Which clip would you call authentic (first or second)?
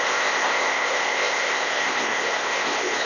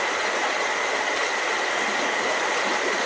second